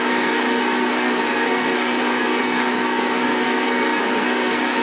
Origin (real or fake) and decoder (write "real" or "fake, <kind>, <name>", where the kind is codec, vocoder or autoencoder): fake, codec, SNAC